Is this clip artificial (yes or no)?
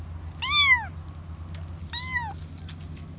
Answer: no